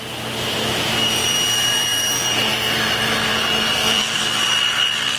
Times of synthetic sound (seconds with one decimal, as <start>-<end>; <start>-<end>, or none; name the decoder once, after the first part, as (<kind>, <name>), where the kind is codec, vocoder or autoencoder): 1.2-2.5 (vocoder, BigVGAN v2); 3.3-4.2